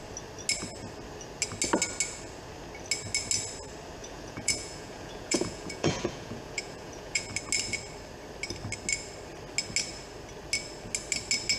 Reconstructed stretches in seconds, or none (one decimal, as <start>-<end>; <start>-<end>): 4.0-7.3